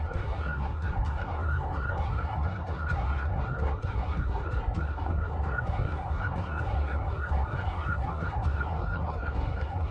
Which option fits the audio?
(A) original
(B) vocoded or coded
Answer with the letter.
B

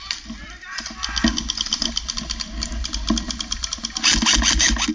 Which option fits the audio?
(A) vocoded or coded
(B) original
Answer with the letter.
B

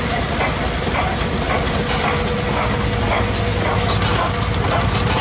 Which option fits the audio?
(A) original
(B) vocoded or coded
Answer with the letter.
A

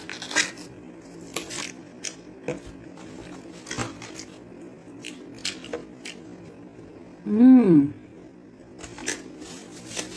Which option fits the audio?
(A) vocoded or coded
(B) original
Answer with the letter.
B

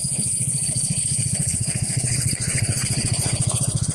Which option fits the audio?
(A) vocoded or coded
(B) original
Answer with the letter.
A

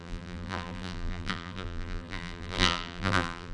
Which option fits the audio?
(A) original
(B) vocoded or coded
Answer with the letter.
B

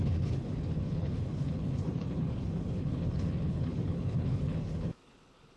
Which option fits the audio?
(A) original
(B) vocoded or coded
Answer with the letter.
B